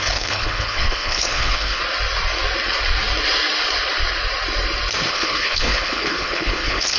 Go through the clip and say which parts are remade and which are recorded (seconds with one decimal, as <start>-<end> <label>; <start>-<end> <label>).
0.0-1.8 remade; 1.8-5.1 recorded; 5.1-7.0 remade